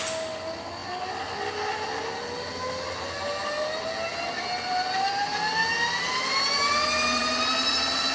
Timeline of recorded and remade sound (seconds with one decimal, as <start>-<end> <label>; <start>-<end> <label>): 0.0-8.1 recorded